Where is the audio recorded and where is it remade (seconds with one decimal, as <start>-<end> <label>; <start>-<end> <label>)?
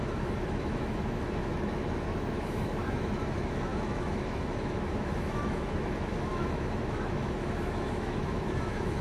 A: 0.0-9.0 remade